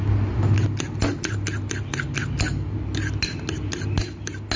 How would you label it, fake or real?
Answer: real